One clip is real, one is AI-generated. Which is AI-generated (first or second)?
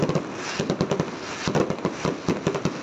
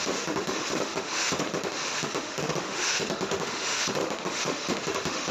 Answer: second